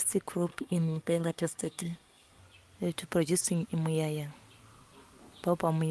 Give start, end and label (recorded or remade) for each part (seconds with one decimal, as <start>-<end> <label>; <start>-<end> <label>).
0.0-0.5 recorded; 0.5-2.4 remade; 2.4-5.9 recorded